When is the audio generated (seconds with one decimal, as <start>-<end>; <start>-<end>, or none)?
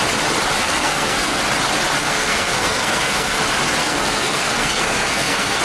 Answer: 0.6-1.4; 2.0-3.4; 3.8-5.6